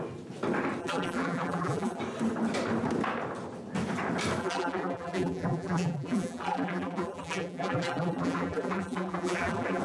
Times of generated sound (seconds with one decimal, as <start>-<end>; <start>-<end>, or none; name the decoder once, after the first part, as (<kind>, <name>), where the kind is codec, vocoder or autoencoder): 0.8-2.0 (vocoder, BigVGAN v2); 4.4-9.8